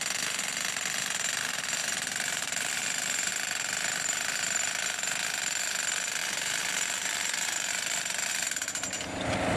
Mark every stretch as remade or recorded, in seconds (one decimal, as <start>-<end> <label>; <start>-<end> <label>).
0.0-1.8 recorded; 1.8-3.3 remade; 3.3-6.2 recorded; 6.2-7.7 remade; 7.7-8.3 recorded; 8.3-9.0 remade; 9.0-9.6 recorded